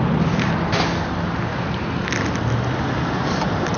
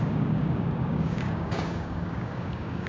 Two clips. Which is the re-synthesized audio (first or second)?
second